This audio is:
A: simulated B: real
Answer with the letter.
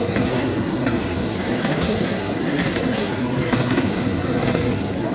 A